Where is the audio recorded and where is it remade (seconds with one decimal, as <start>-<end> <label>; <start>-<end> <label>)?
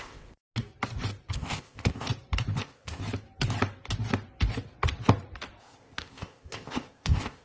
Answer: 0.0-0.4 remade; 0.4-1.3 recorded; 1.3-2.1 remade; 2.1-2.6 recorded; 2.6-3.0 remade; 3.0-5.6 recorded; 5.6-7.4 remade